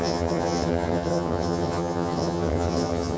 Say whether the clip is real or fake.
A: fake